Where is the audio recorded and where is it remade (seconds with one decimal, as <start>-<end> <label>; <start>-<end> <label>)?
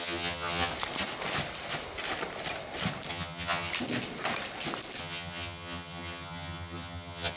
0.0-0.7 remade; 0.7-3.1 recorded; 3.1-3.7 remade; 3.7-5.0 recorded; 5.0-7.4 remade